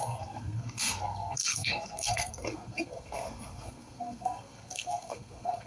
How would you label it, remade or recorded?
remade